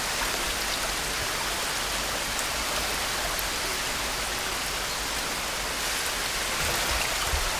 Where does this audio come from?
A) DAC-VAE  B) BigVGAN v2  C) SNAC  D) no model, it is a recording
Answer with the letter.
D